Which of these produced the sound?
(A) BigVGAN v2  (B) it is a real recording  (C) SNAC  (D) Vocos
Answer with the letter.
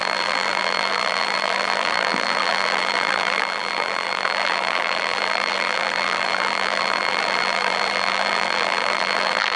A